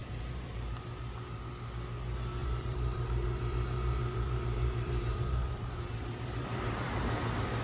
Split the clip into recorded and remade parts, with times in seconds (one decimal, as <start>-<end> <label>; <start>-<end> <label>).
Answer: 0.0-1.5 remade; 1.5-2.4 recorded; 2.4-7.0 remade; 7.0-7.6 recorded